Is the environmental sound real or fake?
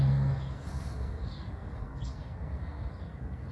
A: fake